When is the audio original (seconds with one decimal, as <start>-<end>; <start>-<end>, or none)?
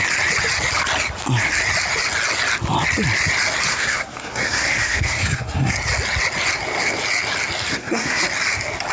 0.0-3.7; 5.7-7.7; 8.2-8.9